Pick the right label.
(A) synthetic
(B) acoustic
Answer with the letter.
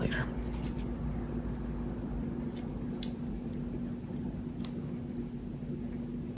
B